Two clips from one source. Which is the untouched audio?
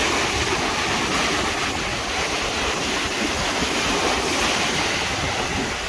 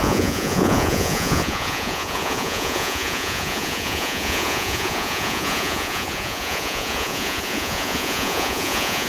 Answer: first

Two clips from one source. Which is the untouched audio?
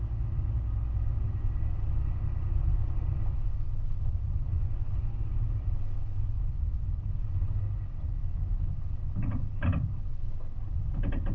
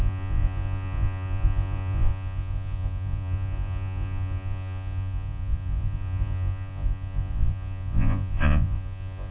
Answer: first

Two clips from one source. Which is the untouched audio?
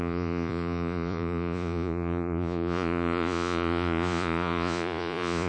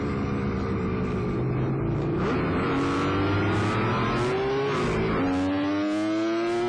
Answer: second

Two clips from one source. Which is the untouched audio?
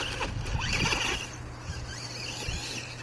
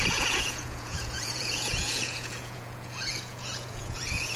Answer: first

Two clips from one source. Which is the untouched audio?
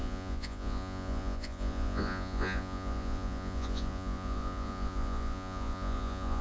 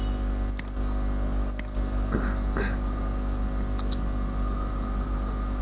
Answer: second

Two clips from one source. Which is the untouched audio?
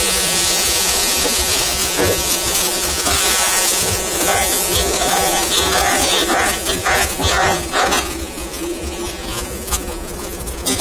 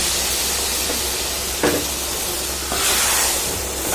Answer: second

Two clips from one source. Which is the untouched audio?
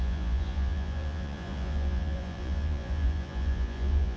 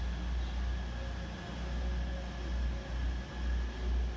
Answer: second